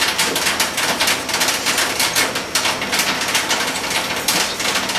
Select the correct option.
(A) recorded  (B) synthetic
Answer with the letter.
A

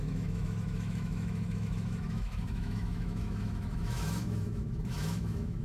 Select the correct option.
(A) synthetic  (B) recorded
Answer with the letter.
A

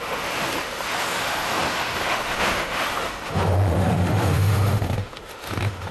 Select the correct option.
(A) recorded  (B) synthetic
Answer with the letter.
B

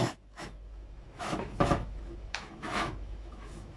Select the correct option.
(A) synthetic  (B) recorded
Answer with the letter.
A